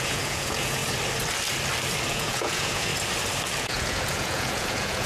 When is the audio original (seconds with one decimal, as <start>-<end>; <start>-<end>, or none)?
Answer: 0.8-2.1; 2.9-3.6